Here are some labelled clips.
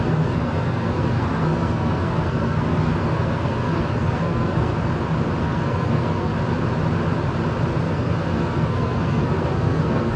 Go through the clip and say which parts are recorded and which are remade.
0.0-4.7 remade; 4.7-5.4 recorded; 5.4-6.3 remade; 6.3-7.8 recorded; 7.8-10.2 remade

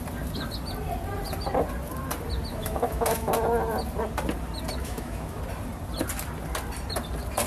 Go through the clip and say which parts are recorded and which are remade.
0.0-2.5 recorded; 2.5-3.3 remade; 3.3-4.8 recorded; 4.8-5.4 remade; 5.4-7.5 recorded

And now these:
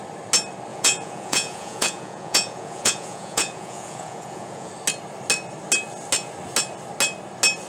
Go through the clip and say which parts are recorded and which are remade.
0.0-0.7 recorded; 0.7-4.7 remade; 4.7-7.7 recorded

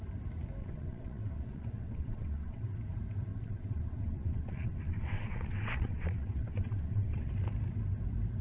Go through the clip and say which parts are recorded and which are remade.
0.0-0.6 recorded; 0.6-2.8 remade; 2.8-3.3 recorded; 3.3-7.3 remade; 7.3-8.4 recorded

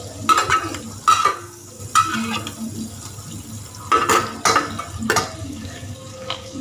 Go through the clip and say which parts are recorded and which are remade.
0.0-1.3 recorded; 1.3-1.8 remade; 1.8-5.4 recorded; 5.4-6.6 remade